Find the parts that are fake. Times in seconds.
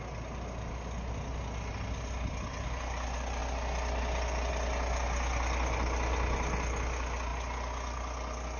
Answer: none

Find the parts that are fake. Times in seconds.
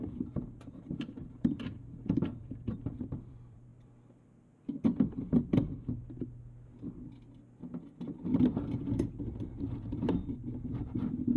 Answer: 0.0-3.7 (vocoder, BigVGAN v2); 8.4-11.4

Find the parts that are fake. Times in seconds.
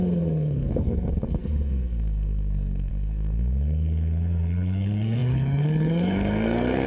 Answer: 0.0-6.9 (codec, SNAC)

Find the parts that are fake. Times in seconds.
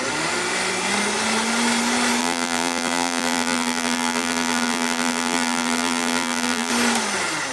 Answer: 2.2-6.7 (vocoder, BigVGAN v2)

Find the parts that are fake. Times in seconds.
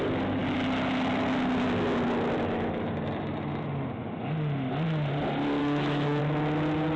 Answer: 5.6-6.2 (autoencoder, DAC-VAE)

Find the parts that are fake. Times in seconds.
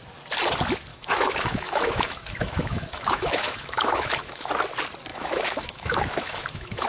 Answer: 0.9-4.5 (autoencoder, DAC-VAE); 5.1-6.9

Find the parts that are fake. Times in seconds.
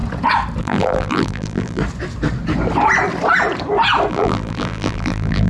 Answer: 0.6-1.8 (vocoder, BigVGAN v2); 4.1-5.5